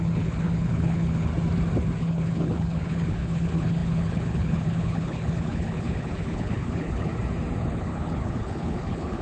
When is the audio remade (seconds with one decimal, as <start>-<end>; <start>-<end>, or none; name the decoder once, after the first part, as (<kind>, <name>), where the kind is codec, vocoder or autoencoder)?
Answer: 0.0-1.3 (codec, HILCodec); 2.0-7.1; 7.6-9.2